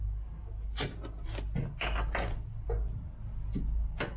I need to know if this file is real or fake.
real